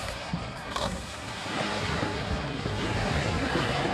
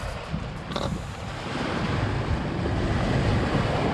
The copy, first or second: first